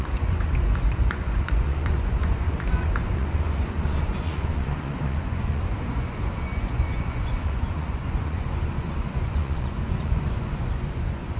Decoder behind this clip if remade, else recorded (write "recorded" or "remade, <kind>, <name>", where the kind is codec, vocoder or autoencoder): remade, vocoder, Vocos